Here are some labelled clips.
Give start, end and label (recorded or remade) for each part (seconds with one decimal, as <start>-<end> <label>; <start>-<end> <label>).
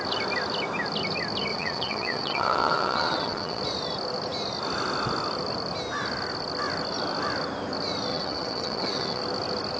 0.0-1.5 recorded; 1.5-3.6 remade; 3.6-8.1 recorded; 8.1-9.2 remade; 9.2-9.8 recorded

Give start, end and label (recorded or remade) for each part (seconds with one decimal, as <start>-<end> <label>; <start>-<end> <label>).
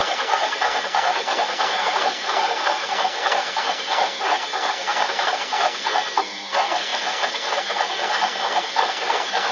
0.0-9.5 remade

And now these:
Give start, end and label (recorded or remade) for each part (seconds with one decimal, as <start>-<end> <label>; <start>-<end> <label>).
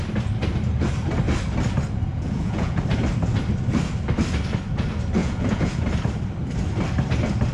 0.0-2.1 recorded; 2.1-2.8 remade; 2.8-5.2 recorded; 5.2-5.8 remade; 5.8-7.5 recorded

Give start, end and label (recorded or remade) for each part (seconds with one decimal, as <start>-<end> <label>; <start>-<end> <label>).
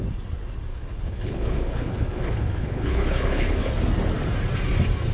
0.0-0.7 recorded; 0.7-3.7 remade; 3.7-5.1 recorded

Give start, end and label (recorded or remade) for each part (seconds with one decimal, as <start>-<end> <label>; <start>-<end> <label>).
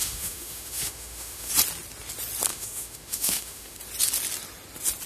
0.0-1.5 remade; 1.5-2.5 recorded; 2.5-3.8 remade; 3.8-5.1 recorded